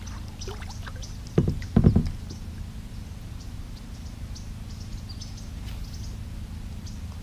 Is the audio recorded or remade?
recorded